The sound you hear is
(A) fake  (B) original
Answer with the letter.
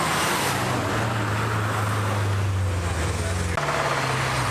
B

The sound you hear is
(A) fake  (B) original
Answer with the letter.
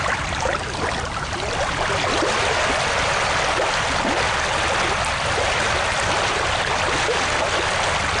B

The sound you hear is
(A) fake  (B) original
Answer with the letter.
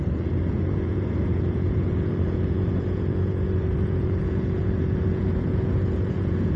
A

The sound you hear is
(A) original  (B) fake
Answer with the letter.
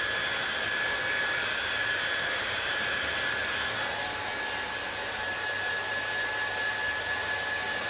A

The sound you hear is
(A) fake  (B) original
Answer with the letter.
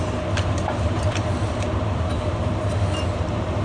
A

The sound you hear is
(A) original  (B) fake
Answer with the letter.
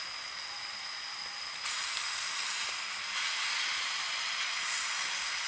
A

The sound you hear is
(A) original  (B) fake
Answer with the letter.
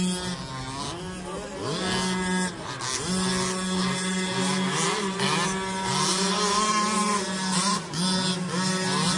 A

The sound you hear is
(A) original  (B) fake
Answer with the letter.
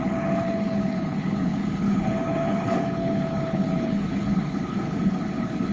B